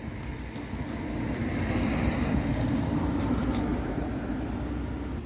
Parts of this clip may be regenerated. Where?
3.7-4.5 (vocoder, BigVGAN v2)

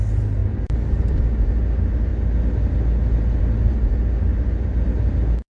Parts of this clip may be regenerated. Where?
0.4-1.2 (vocoder, BigVGAN v2); 4.3-5.5

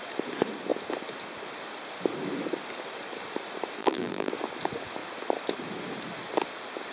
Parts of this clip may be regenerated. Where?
3.8-4.3 (vocoder, BigVGAN v2)

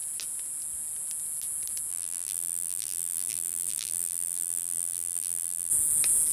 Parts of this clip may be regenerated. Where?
1.9-5.7 (vocoder, BigVGAN v2)

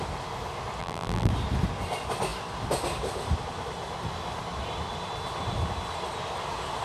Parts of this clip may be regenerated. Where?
0.8-1.3 (vocoder, BigVGAN v2)